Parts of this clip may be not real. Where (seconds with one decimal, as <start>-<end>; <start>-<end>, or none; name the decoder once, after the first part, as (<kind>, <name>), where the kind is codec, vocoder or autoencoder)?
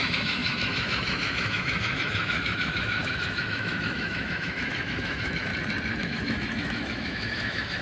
0.0-5.5 (autoencoder, DAC-VAE); 6.0-7.8